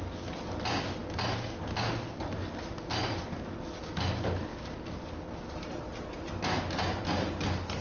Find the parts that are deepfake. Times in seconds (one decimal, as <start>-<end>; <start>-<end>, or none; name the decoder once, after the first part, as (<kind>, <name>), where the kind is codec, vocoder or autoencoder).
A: none